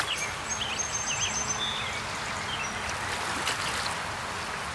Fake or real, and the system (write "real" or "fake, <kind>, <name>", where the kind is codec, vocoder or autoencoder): real